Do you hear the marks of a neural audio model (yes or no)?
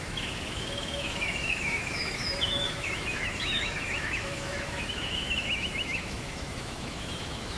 yes